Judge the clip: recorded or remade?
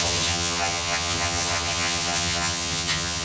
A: remade